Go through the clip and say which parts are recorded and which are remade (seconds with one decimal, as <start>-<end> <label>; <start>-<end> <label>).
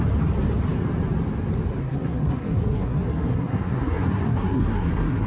0.0-1.8 recorded; 1.8-5.3 remade